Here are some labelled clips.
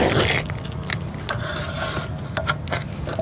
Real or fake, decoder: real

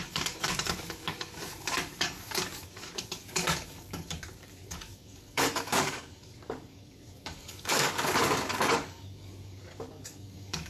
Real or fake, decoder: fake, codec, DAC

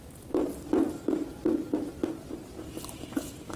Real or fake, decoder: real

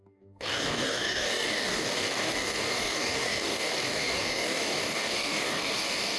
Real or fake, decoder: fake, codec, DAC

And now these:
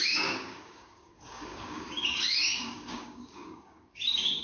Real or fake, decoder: fake, codec, DAC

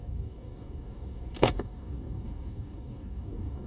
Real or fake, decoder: fake, codec, DAC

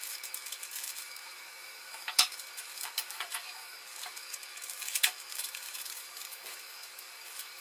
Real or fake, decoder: fake, codec, DAC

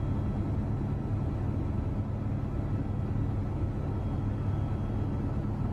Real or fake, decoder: real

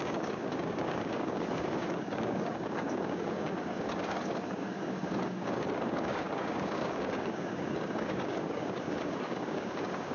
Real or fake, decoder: fake, codec, DAC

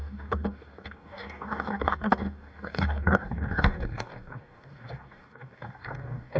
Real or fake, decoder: fake, codec, DAC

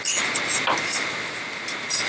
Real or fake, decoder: real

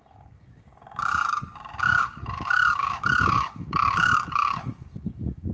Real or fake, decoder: fake, codec, DAC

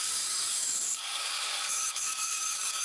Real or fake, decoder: fake, codec, DAC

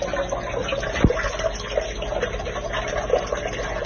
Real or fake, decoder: real